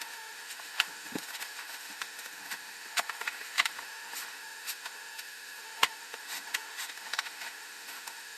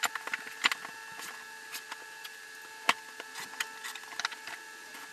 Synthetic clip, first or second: first